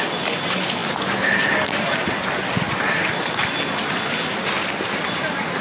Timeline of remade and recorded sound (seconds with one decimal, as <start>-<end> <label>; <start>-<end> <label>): 0.0-5.6 recorded

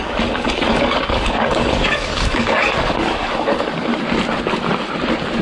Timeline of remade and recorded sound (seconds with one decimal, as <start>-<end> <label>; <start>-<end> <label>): 0.0-3.9 remade; 3.9-5.4 recorded

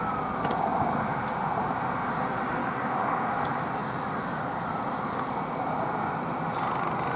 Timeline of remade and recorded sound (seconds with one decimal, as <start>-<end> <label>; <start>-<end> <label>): 0.0-2.6 recorded; 2.6-3.3 remade; 3.3-7.2 recorded

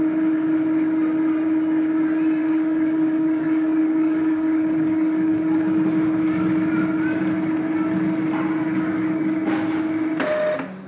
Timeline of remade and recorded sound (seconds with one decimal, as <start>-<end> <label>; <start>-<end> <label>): 0.0-2.4 recorded; 2.4-5.6 remade; 5.6-8.7 recorded; 8.7-9.5 remade; 9.5-10.9 recorded

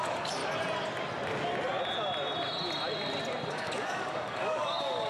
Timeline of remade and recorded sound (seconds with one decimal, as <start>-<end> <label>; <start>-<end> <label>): 0.0-0.4 remade; 0.4-3.5 recorded; 3.5-5.1 remade